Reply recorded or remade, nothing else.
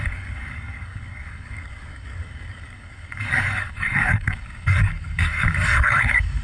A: remade